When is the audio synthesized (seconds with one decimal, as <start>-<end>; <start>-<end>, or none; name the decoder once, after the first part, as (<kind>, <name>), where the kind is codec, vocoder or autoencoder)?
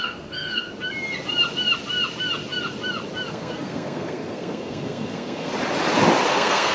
0.0-0.7 (codec, SNAC); 3.3-5.5; 6.3-6.7